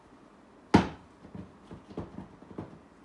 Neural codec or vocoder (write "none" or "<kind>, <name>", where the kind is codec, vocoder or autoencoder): none